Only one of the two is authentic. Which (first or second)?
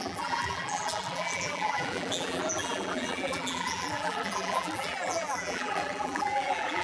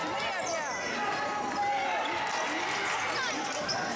second